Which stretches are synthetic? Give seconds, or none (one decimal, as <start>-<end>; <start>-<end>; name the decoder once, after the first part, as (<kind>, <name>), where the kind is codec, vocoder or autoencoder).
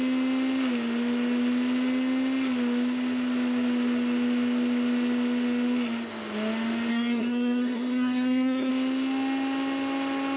6.9-8.7 (codec, SNAC)